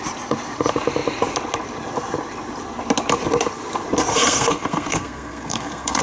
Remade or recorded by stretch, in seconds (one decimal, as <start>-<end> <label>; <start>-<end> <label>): 0.0-4.1 recorded; 4.1-6.0 remade